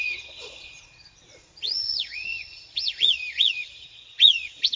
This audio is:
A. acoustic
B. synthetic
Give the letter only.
B